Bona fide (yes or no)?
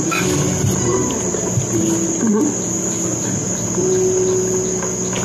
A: yes